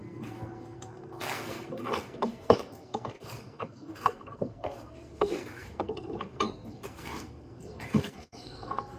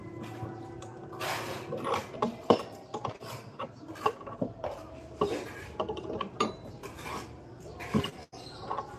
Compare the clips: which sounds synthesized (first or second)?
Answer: first